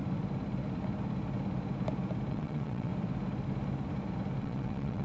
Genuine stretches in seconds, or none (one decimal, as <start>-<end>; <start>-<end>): 0.0-2.3; 2.9-4.4